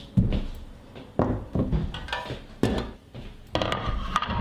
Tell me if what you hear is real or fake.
real